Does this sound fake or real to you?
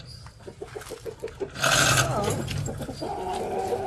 real